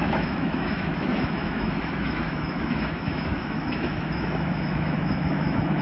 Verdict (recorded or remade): remade